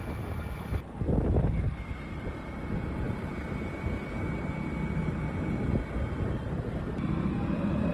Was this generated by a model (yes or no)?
no